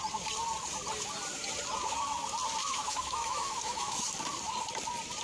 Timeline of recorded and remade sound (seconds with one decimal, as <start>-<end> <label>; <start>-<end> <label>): 0.0-2.6 recorded; 2.6-4.1 remade; 4.1-5.2 recorded